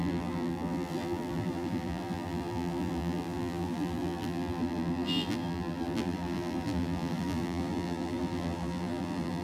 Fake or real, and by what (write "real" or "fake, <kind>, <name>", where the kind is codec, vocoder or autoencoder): fake, vocoder, BigVGAN v2